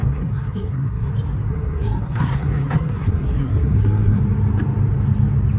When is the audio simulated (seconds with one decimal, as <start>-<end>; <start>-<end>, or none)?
0.0-1.1; 1.5-4.2